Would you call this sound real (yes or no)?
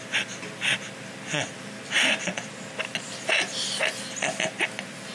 yes